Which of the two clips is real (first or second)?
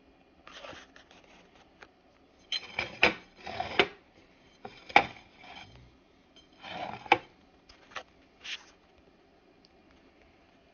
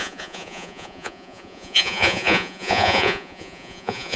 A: first